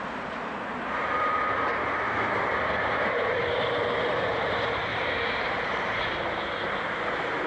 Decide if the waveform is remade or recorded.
remade